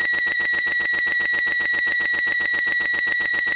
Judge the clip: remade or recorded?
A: remade